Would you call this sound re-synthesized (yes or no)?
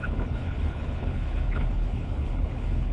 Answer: yes